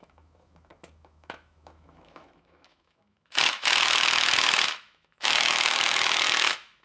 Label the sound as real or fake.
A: fake